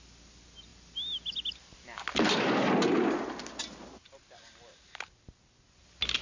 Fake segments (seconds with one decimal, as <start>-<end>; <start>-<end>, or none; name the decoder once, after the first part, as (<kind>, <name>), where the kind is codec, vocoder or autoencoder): none